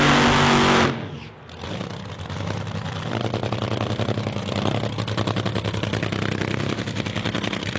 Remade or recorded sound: recorded